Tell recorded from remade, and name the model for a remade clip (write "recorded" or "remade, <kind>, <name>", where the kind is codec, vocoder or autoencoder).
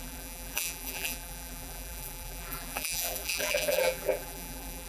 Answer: remade, vocoder, BigVGAN v2